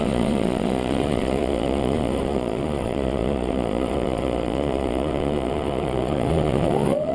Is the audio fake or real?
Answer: fake